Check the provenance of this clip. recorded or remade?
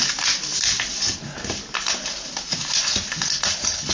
recorded